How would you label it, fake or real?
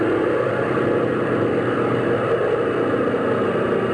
real